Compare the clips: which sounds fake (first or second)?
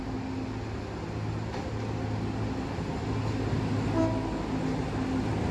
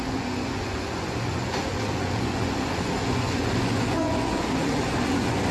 second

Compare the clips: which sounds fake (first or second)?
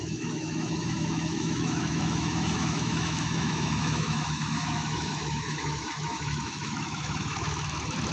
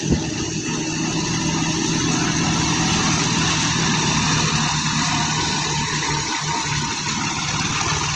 first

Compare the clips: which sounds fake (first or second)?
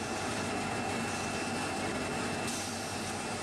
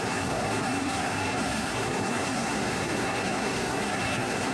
second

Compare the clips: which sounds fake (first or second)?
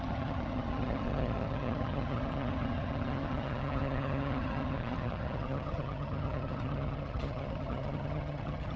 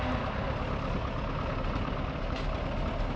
first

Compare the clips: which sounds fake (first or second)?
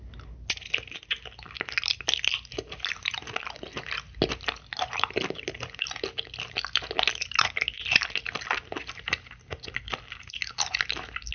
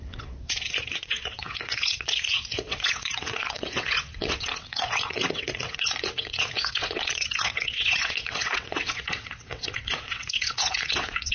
second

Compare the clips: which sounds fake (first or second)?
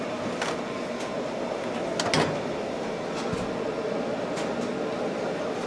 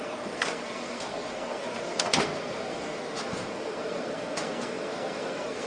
second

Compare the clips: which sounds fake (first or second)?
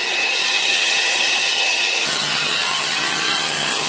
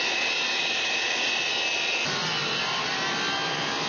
first